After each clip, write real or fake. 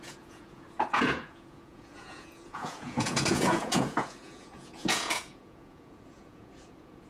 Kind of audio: fake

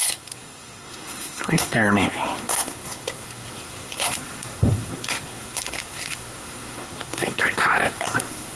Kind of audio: fake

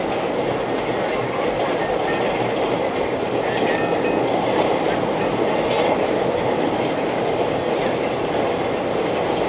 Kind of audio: real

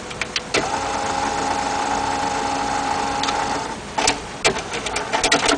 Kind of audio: real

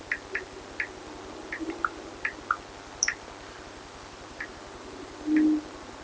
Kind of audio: real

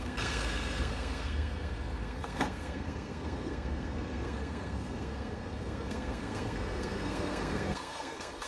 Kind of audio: fake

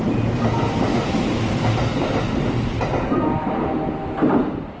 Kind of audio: real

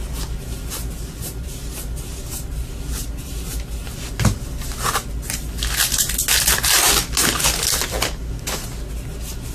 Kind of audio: real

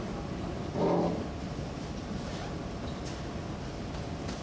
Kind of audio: real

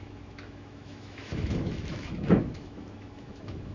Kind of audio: fake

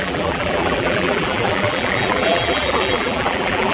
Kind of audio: fake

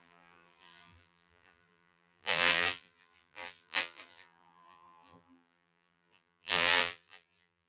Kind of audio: fake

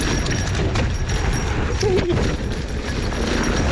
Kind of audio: real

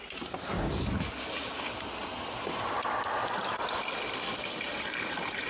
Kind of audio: real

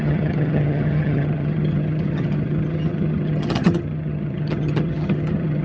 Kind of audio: fake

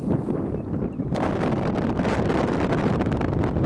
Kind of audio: fake